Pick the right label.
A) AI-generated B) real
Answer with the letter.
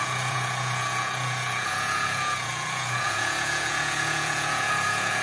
A